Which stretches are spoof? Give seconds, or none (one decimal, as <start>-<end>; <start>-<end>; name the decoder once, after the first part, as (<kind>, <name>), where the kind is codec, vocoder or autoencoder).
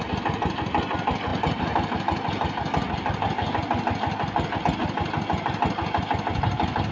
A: none